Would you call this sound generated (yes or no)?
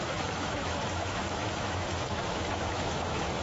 yes